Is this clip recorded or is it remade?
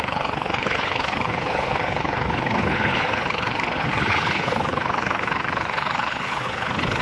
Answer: remade